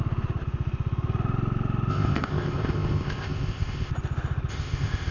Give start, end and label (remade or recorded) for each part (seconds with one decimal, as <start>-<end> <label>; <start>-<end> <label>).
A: 0.0-1.9 recorded; 1.9-3.9 remade; 3.9-4.5 recorded; 4.5-5.1 remade

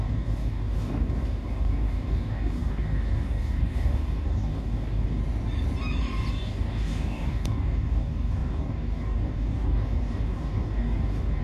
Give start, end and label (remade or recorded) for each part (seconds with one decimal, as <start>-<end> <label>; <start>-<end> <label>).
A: 0.0-5.2 remade; 5.2-6.3 recorded; 6.3-11.4 remade

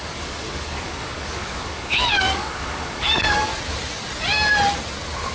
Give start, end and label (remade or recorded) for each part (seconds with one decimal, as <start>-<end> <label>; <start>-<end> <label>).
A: 0.0-3.5 remade; 3.5-5.3 recorded